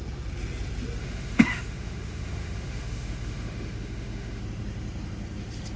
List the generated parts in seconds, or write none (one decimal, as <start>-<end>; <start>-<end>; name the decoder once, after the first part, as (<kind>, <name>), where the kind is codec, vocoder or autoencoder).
1.0-4.4 (autoencoder, DAC-VAE)